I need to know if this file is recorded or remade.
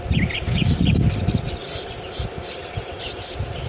remade